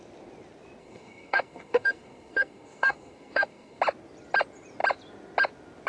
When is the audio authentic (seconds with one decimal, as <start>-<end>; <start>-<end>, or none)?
0.0-0.8; 3.8-5.9

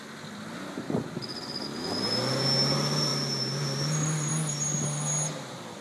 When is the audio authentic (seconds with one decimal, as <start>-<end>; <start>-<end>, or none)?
0.0-5.8

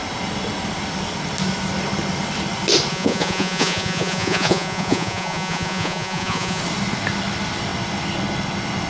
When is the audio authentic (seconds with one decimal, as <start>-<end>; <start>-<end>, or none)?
0.0-2.9; 6.6-8.9

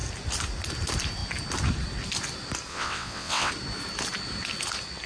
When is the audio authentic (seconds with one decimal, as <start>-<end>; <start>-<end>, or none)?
0.0-2.7; 3.5-5.1